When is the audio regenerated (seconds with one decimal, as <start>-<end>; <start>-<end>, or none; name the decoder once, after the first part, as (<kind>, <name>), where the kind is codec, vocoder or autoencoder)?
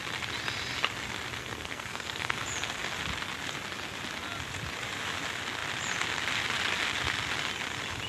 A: 1.4-2.4 (codec, SNAC)